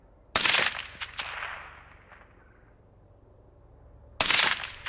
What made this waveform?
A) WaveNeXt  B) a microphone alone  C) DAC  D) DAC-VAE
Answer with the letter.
B